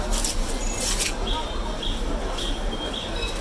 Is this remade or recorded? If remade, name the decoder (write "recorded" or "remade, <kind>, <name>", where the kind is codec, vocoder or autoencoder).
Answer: recorded